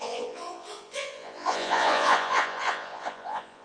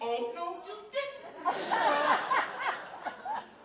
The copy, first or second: first